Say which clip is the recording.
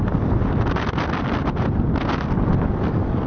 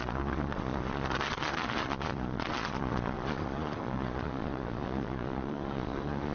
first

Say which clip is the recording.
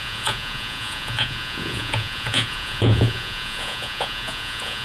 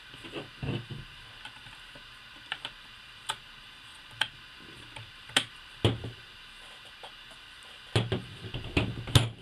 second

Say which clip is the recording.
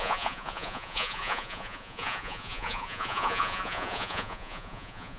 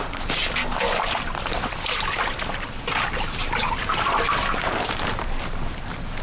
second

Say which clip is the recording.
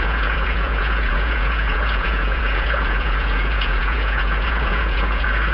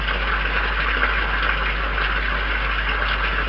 second